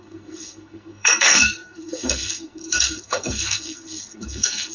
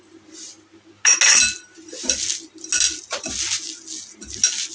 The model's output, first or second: first